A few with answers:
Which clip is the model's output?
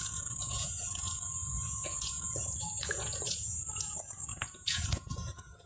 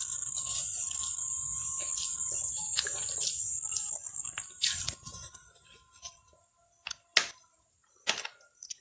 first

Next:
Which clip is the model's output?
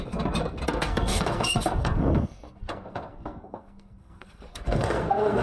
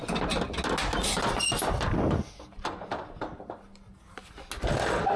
first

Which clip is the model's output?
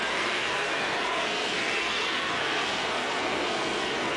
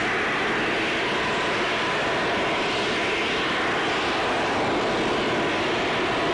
first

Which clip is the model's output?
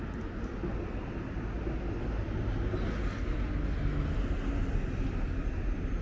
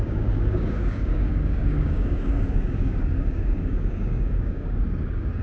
second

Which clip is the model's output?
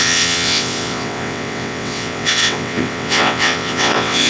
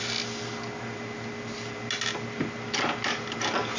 first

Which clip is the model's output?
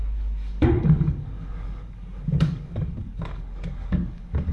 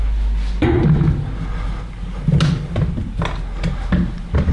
first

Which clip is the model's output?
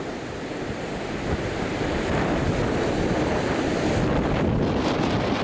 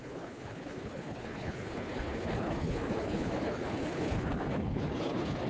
second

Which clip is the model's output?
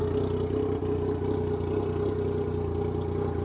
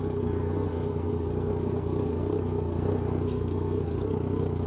second